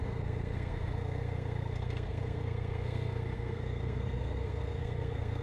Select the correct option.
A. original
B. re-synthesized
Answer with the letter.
B